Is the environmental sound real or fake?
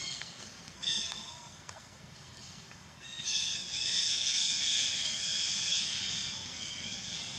fake